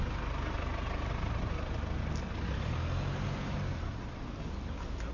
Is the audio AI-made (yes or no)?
no